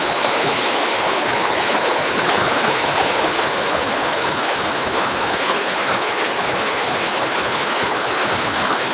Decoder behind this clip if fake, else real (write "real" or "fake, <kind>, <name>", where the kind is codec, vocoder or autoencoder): fake, codec, HILCodec